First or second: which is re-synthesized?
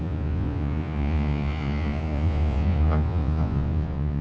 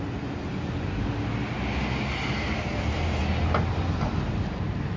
first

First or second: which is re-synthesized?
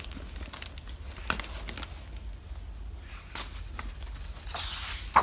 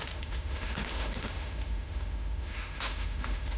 second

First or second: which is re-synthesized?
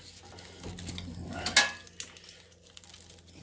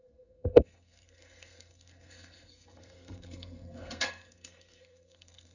second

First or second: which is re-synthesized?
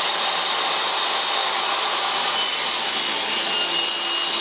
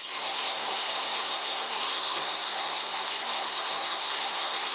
second